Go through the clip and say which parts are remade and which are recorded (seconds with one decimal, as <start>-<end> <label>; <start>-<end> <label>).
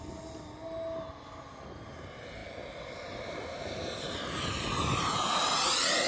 0.0-6.1 recorded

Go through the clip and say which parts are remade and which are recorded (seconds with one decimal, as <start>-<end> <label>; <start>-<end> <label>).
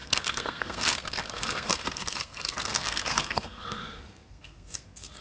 0.0-5.2 remade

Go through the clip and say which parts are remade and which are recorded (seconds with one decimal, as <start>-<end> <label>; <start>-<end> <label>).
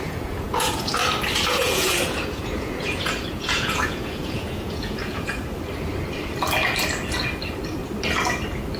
0.0-0.9 remade; 0.9-1.5 recorded; 1.5-5.4 remade; 5.4-8.8 recorded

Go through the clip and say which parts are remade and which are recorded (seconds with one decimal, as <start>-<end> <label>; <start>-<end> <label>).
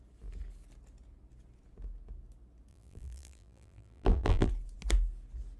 0.0-2.7 recorded; 2.7-4.5 remade; 4.5-5.6 recorded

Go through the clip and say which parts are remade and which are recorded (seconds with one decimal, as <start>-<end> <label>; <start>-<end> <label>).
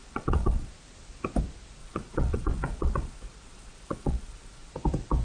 0.0-0.7 remade; 0.7-1.8 recorded; 1.8-4.7 remade; 4.7-5.2 recorded